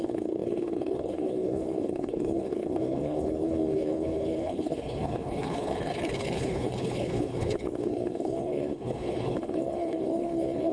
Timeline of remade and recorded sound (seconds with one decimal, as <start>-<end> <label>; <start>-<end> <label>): 0.0-10.7 remade